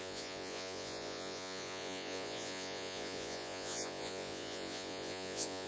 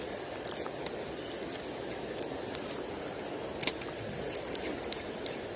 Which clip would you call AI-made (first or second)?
first